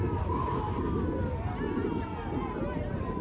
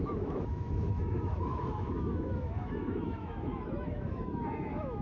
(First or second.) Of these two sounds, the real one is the first